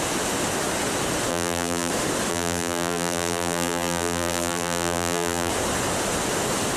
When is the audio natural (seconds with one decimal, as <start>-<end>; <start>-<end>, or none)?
0.0-1.3; 1.9-2.3; 5.5-6.8